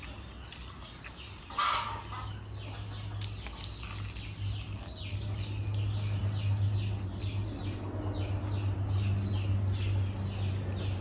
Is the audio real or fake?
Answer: real